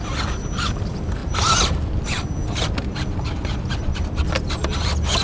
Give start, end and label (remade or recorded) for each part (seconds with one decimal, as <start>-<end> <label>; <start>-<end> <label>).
0.0-5.2 recorded